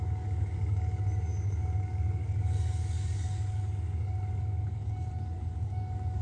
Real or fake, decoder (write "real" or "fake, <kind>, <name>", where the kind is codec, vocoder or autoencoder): fake, codec, DAC